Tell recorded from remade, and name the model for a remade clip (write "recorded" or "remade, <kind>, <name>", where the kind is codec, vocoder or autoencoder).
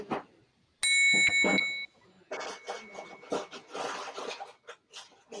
recorded